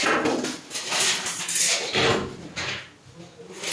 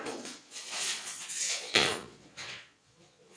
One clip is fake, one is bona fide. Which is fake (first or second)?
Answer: second